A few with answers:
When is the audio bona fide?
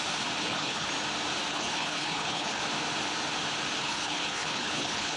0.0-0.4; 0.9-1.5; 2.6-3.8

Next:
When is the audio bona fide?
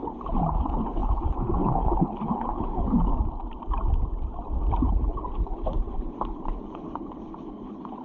3.1-4.8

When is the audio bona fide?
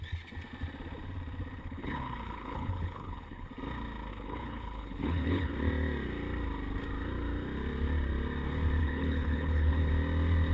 0.0-1.6; 3.5-4.1; 5.5-8.8; 9.9-10.5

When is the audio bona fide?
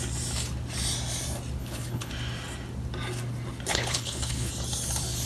0.0-1.6; 2.1-3.7; 4.5-5.3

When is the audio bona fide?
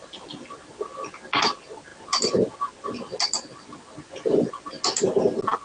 0.0-5.6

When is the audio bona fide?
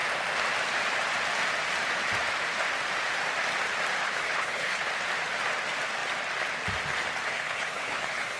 0.0-4.0; 4.8-7.3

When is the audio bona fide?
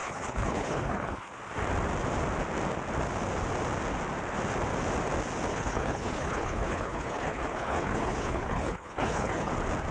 1.3-5.5; 9.5-9.9